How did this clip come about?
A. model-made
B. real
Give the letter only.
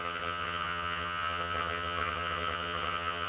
A